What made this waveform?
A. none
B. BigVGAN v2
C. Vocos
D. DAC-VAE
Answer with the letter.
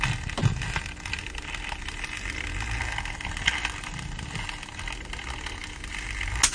A